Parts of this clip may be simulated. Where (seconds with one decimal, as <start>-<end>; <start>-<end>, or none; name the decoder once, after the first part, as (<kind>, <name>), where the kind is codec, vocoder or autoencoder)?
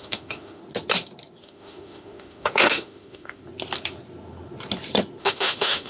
0.0-0.6 (autoencoder, DAC-VAE); 1.4-3.4; 5.2-5.9